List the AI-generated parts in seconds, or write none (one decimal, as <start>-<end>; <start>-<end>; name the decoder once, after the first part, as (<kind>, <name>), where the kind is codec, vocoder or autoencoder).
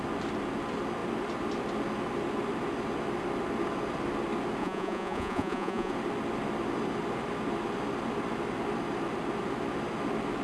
4.6-5.9 (vocoder, Vocos)